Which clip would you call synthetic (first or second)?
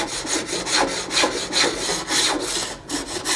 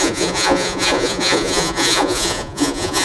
second